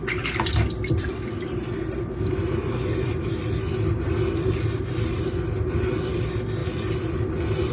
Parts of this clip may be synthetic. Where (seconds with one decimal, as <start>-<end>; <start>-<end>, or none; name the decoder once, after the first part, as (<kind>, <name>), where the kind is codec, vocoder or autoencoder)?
none